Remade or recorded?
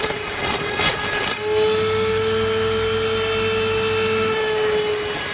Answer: recorded